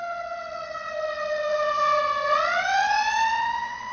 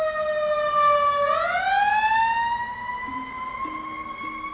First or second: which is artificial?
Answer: first